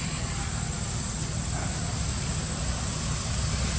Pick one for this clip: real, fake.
real